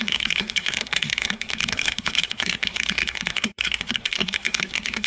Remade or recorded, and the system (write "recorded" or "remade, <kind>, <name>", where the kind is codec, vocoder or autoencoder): remade, codec, SNAC